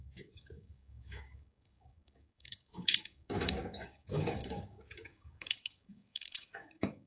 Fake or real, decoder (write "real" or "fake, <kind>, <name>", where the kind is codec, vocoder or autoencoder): fake, codec, DAC